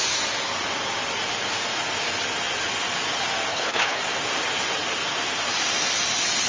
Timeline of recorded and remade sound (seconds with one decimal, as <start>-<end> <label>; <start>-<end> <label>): 0.0-3.5 recorded; 3.5-4.0 remade; 4.0-6.5 recorded